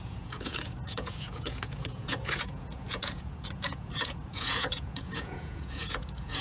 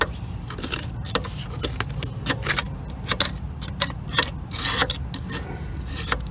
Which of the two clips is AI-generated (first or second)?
first